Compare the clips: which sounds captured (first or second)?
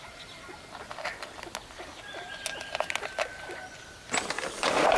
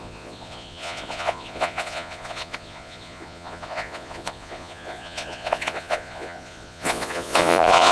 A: first